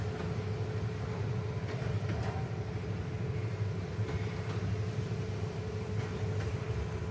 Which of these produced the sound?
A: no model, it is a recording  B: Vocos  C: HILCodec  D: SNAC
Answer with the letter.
A